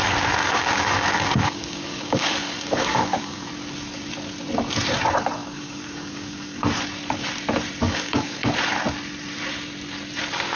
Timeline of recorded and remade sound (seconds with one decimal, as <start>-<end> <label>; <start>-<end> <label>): 0.0-0.4 recorded; 0.4-3.5 remade; 3.5-5.4 recorded; 5.4-6.7 remade; 6.7-7.8 recorded; 7.8-8.5 remade; 8.5-10.6 recorded